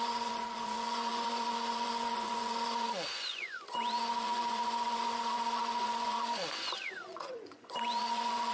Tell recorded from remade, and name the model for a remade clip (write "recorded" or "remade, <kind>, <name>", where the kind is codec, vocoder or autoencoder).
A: remade, vocoder, Vocos